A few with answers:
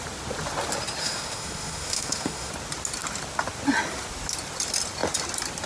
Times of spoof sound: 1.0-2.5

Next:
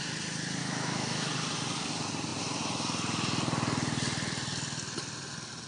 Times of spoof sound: 0.6-1.3

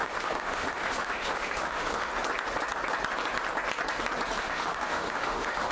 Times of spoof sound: 0.0-2.1; 4.4-5.7

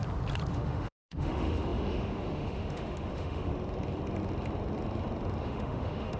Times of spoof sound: 0.5-3.5; 5.4-6.2

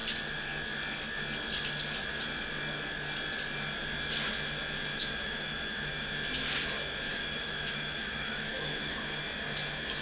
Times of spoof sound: 4.9-5.9; 7.1-9.2